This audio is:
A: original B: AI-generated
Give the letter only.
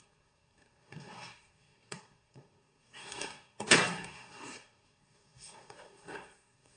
B